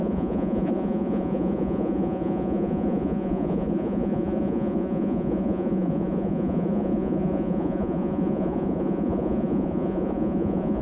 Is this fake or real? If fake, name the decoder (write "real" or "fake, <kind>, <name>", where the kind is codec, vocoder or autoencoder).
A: fake, vocoder, Vocos